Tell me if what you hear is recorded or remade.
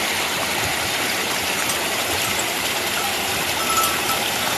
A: recorded